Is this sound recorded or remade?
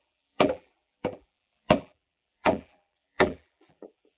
remade